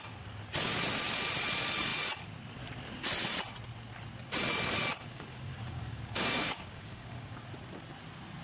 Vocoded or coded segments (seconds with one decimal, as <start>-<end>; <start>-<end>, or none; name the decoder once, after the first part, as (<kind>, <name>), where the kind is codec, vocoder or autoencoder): 5.1-7.4 (codec, DAC)